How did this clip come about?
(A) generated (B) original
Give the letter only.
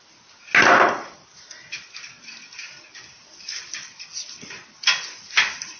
B